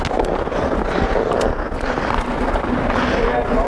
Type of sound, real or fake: real